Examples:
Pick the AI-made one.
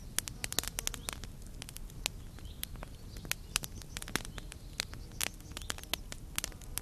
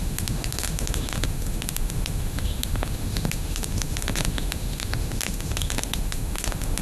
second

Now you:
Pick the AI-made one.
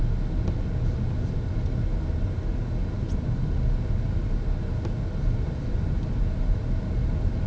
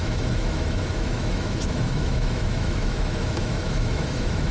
second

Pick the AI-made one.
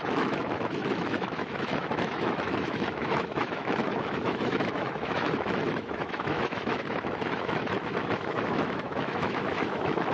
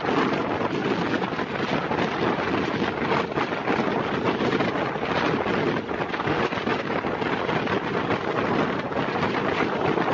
first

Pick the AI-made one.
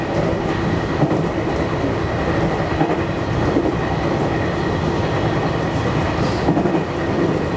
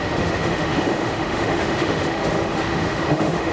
second